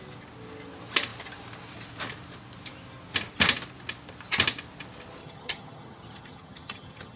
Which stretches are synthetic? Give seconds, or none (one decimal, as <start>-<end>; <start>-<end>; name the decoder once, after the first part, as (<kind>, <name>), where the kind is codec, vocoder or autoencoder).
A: 5.2-7.2 (vocoder, HiFi-GAN)